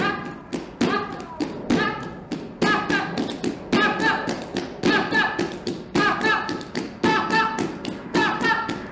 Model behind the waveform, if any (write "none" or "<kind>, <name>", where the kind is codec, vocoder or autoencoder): none